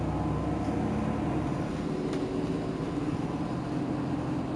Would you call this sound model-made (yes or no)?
no